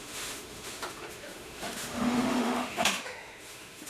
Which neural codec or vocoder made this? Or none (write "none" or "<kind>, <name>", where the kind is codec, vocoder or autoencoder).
autoencoder, DAC-VAE